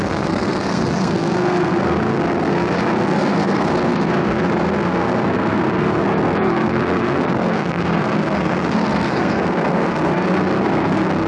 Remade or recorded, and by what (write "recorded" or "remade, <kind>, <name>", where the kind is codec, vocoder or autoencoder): remade, codec, SNAC